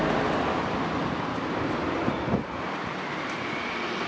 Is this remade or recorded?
recorded